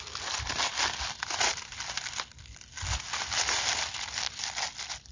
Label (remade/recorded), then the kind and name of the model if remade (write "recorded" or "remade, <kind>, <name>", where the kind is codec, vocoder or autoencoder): recorded